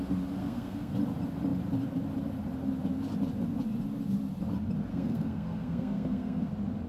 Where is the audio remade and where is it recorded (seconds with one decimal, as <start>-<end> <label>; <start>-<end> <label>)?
0.0-0.4 recorded; 0.4-0.9 remade; 0.9-4.9 recorded; 4.9-6.5 remade; 6.5-6.9 recorded